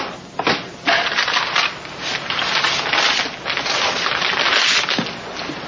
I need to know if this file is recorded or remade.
recorded